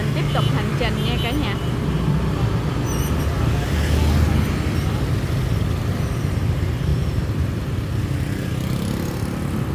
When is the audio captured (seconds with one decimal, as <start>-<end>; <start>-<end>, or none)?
0.0-9.7